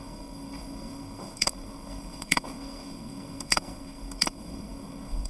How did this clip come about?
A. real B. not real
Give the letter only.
B